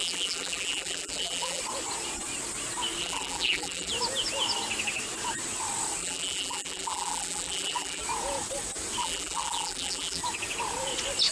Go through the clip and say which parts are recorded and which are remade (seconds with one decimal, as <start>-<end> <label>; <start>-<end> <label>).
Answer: 0.0-1.6 remade; 1.6-3.0 recorded; 3.0-3.9 remade; 3.9-6.0 recorded; 6.0-8.0 remade; 8.0-9.0 recorded; 9.0-10.2 remade; 10.2-11.3 recorded